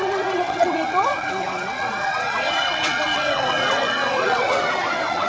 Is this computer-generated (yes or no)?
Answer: yes